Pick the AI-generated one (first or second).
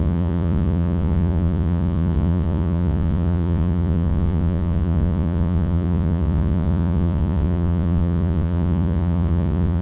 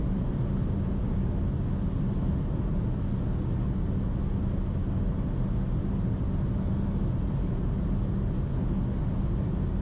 first